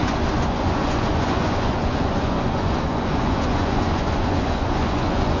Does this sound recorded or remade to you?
remade